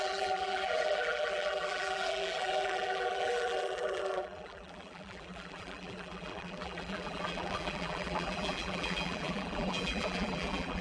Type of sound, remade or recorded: remade